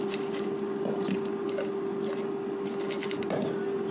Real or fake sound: real